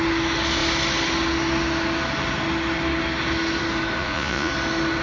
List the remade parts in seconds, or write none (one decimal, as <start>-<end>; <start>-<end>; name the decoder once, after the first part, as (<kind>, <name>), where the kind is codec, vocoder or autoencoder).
4.0-4.5 (vocoder, Vocos)